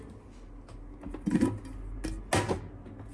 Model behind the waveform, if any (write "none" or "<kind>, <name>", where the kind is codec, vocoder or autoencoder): none